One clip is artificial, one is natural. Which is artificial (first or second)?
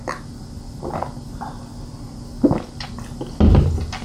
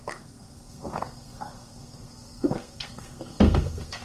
second